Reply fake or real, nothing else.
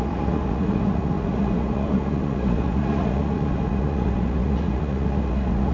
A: fake